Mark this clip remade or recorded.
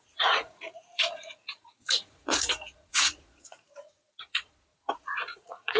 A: remade